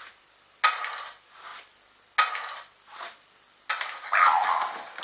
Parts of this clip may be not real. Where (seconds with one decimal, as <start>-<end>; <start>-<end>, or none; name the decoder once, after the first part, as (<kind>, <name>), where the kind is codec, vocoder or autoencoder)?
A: none

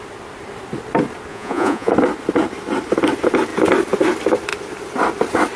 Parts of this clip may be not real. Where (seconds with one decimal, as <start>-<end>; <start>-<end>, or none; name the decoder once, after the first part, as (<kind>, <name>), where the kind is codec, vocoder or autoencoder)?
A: 1.3-1.9 (vocoder, Vocos)

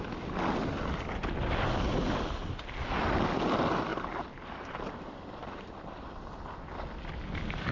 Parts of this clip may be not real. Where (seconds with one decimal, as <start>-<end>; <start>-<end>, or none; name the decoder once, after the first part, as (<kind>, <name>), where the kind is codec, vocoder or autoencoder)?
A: 3.9-5.0 (vocoder, BigVGAN v2); 5.4-6.2

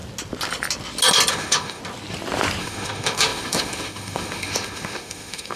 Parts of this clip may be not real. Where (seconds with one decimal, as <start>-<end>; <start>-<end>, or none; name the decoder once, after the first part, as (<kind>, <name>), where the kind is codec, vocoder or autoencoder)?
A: 1.3-1.8 (autoencoder, DAC-VAE); 2.6-5.6

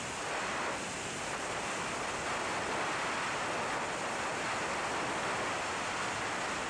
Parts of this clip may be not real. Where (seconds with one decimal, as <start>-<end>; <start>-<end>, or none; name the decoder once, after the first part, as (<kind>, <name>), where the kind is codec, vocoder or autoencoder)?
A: none

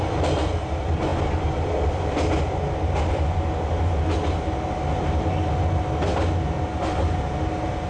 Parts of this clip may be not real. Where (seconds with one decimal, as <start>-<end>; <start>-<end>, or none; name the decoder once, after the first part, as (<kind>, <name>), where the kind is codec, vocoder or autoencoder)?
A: none

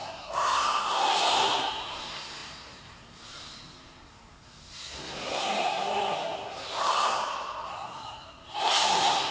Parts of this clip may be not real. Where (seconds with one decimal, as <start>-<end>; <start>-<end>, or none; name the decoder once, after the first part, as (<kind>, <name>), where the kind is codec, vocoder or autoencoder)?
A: 0.0-9.3 (codec, SNAC)